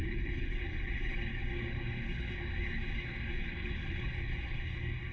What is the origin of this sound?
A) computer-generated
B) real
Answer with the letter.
A